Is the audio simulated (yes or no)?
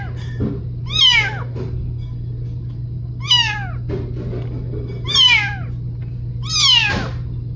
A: no